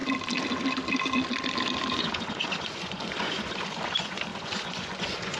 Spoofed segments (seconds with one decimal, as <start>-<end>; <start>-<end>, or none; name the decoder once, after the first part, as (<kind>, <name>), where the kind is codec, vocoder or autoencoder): 1.9-5.4 (vocoder, Vocos)